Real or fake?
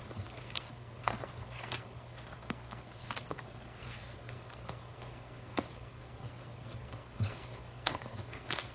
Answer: fake